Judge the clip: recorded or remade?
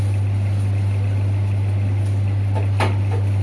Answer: recorded